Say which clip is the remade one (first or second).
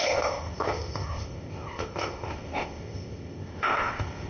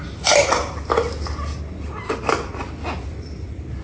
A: first